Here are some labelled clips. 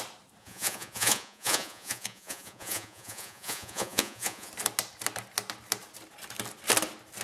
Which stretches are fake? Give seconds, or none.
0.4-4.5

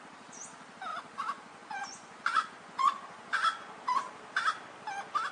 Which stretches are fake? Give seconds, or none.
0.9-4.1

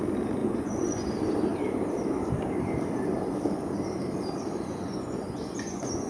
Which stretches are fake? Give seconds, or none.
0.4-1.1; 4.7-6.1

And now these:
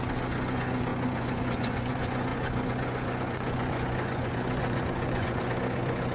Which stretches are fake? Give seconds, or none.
0.0-6.1